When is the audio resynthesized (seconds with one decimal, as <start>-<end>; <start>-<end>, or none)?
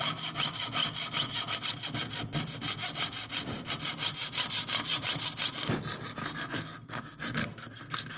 6.2-7.0; 7.4-8.2